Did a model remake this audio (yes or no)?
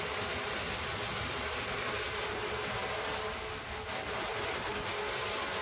no